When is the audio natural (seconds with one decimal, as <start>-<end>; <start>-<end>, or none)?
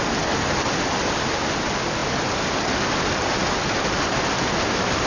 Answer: 0.0-5.1